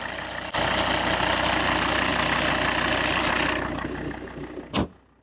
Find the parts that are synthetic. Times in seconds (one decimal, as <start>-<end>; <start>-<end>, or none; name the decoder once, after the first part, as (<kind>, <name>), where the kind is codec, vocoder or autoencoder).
none